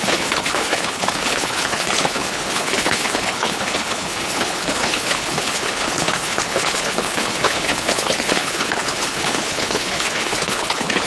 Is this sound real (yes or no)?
no